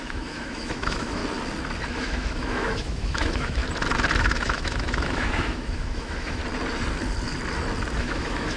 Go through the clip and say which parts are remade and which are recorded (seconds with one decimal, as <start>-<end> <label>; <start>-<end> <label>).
0.0-1.2 remade; 1.2-1.9 recorded; 1.9-3.6 remade; 3.6-4.2 recorded; 4.2-6.4 remade; 6.4-8.0 recorded; 8.0-8.6 remade